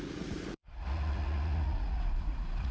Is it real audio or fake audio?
fake